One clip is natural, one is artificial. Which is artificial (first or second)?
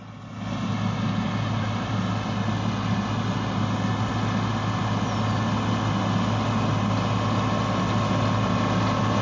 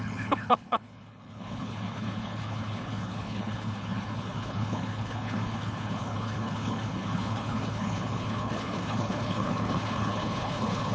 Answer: second